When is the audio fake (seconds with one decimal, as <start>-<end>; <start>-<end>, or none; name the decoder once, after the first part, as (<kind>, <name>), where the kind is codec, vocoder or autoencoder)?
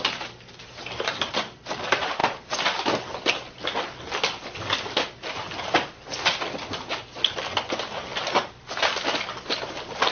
none